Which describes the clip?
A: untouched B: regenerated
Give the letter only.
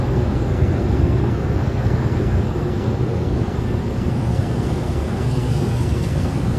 B